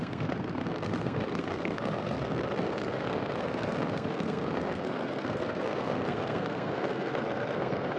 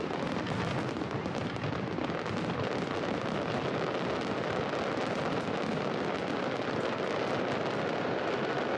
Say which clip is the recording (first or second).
second